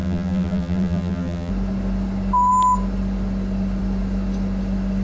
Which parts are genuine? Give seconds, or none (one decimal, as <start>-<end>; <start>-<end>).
1.5-5.0